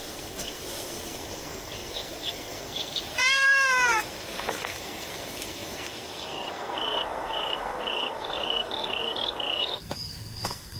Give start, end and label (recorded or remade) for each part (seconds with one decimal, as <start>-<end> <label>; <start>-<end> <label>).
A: 0.0-10.8 remade